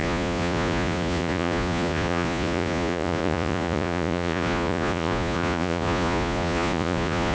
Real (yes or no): no